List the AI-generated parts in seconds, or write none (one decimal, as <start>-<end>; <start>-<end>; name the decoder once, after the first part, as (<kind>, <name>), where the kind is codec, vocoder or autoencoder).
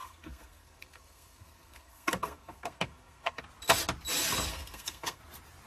0.0-3.4 (codec, SNAC); 4.5-5.2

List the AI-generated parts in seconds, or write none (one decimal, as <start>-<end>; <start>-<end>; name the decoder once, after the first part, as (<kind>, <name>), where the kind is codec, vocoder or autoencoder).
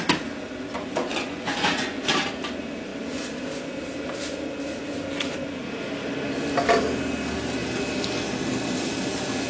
1.1-2.1 (vocoder, Vocos)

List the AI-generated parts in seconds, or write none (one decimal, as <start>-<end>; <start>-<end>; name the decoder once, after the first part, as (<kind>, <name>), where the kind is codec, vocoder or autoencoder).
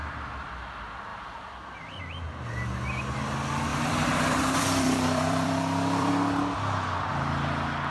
1.1-2.0 (vocoder, BigVGAN v2); 3.7-6.1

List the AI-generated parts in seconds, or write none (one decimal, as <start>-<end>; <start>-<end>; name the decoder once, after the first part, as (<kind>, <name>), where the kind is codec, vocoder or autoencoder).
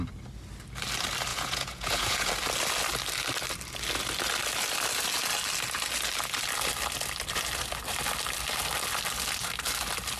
1.3-2.3 (vocoder, Vocos)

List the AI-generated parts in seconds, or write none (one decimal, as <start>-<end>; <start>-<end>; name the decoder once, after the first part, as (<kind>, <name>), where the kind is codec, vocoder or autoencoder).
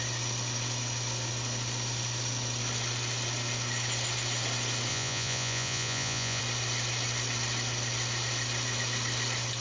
4.9-6.4 (vocoder, Vocos)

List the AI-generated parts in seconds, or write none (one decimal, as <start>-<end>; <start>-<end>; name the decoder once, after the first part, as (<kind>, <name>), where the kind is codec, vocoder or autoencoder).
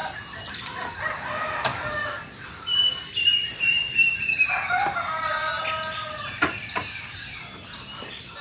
none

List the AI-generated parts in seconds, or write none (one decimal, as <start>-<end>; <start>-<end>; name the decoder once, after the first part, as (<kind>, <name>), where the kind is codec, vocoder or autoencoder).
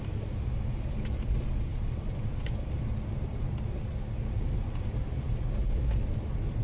none